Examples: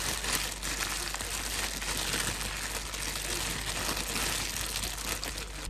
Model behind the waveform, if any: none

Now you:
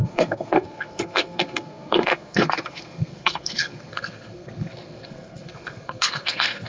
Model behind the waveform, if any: codec, SNAC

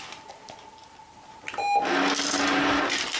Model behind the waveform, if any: none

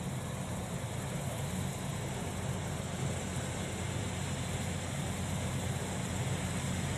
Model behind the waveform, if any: none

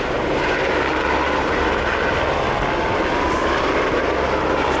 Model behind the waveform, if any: none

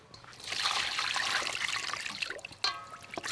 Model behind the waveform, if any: none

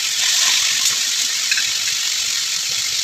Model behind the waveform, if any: none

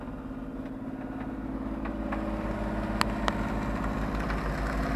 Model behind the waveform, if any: none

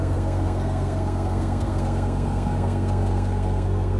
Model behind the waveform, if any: codec, SNAC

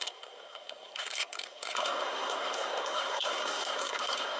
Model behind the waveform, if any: codec, SNAC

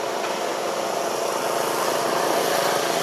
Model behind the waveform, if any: none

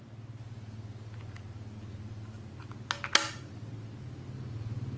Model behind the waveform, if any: none